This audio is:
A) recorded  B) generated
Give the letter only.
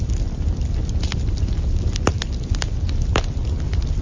A